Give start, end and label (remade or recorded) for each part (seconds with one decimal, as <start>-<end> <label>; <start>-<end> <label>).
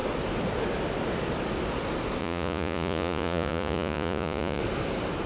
0.0-2.2 recorded; 2.2-4.6 remade; 4.6-5.3 recorded